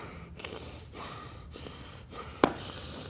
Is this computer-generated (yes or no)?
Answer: no